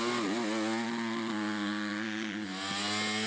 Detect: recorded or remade recorded